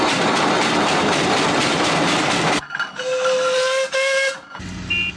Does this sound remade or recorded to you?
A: recorded